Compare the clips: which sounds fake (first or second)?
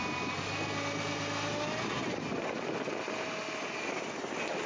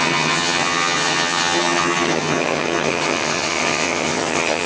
second